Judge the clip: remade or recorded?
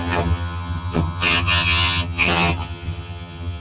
remade